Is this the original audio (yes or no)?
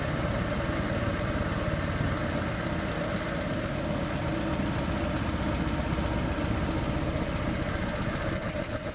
yes